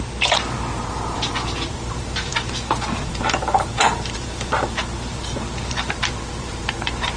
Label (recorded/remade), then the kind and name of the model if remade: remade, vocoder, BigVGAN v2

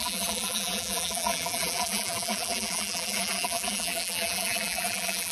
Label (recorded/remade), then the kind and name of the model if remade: remade, vocoder, BigVGAN v2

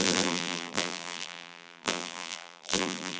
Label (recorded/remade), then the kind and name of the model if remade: remade, vocoder, BigVGAN v2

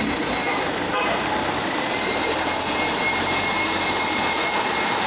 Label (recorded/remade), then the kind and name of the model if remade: remade, vocoder, BigVGAN v2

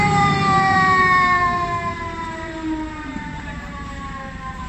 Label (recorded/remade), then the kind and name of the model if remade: remade, vocoder, BigVGAN v2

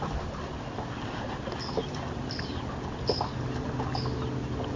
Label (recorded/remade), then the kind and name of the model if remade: recorded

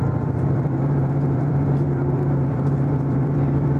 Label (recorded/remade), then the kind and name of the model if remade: remade, vocoder, BigVGAN v2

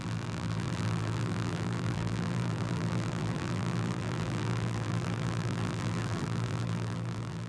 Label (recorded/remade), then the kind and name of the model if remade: remade, vocoder, BigVGAN v2